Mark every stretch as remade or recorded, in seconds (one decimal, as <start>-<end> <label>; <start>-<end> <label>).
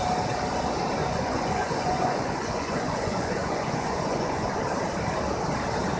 0.0-1.0 recorded; 1.0-4.6 remade; 4.6-6.0 recorded